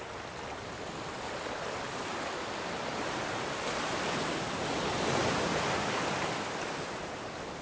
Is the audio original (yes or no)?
yes